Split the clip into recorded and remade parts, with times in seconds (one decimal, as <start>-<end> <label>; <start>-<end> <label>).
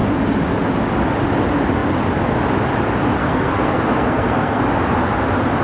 0.0-3.2 recorded; 3.2-4.6 remade; 4.6-5.6 recorded